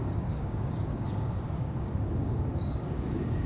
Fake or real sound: fake